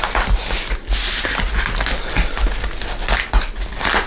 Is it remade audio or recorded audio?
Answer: recorded